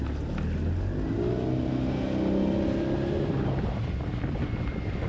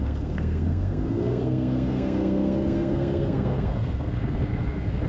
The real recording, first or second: first